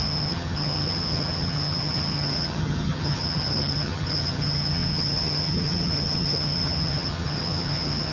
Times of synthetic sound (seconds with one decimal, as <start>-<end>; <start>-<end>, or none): 0.0-8.1